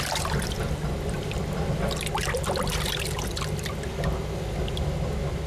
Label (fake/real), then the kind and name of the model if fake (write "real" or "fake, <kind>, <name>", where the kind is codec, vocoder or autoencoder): real